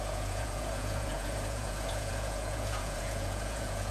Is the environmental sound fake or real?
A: fake